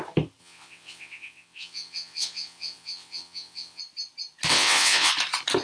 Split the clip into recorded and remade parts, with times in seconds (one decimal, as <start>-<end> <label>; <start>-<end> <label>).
0.0-0.4 recorded; 0.4-3.8 remade; 3.8-4.5 recorded; 4.5-5.1 remade; 5.1-5.6 recorded

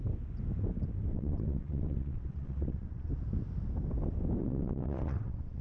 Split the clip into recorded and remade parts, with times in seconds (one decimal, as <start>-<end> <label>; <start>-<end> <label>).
0.0-1.1 recorded; 1.1-3.1 remade; 3.1-4.4 recorded; 4.4-5.6 remade

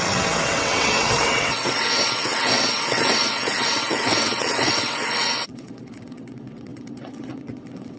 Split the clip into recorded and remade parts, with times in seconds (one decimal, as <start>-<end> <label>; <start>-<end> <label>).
0.0-8.0 remade

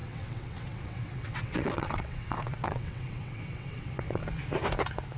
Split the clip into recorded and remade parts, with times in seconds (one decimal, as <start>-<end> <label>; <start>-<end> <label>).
0.0-4.2 remade; 4.2-5.2 recorded